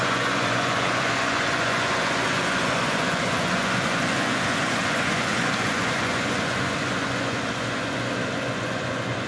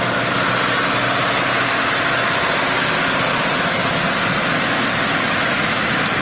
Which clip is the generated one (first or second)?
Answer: first